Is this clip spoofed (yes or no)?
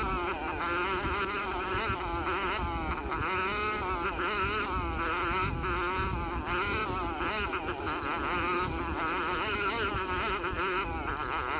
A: no